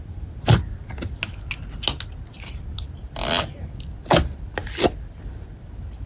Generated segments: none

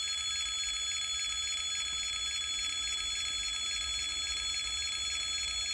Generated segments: none

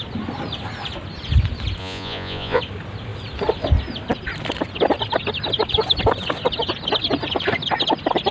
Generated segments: 1.8-2.6 (vocoder, Vocos)